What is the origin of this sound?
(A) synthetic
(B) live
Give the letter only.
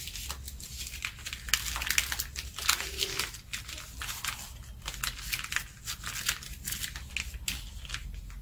B